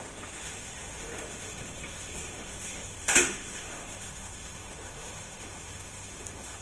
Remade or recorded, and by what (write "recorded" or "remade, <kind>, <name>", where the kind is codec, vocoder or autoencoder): remade, autoencoder, DAC-VAE